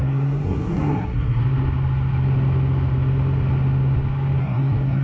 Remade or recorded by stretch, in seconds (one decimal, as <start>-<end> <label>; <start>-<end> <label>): 0.0-1.4 remade; 1.4-4.4 recorded; 4.4-5.0 remade